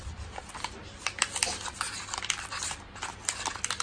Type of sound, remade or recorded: recorded